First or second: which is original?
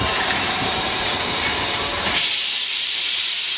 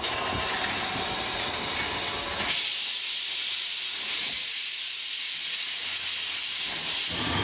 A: second